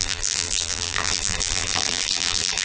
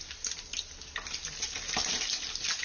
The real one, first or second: second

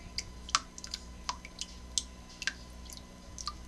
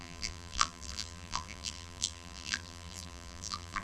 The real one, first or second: first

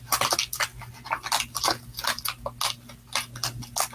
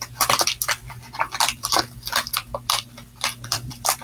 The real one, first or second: first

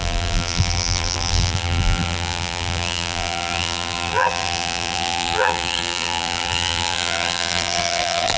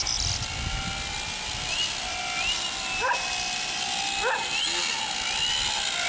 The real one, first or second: second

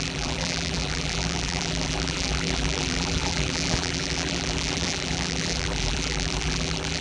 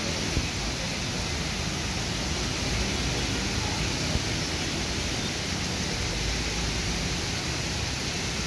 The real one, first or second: second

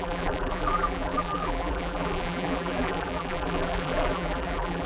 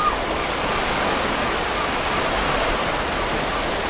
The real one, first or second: second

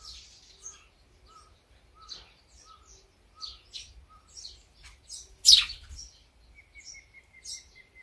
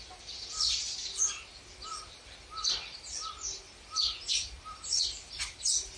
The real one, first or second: first